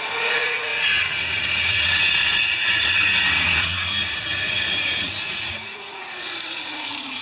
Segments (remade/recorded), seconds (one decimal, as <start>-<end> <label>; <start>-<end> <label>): 0.0-7.2 remade